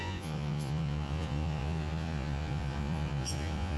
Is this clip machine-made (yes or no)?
yes